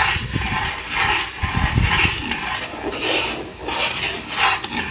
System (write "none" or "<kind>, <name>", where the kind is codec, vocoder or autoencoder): none